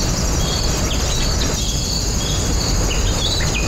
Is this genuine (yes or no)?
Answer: yes